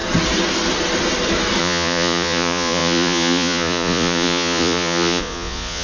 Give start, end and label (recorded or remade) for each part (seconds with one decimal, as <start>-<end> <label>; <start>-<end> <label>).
0.0-1.6 recorded; 1.6-5.8 remade